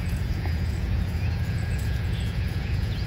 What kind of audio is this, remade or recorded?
remade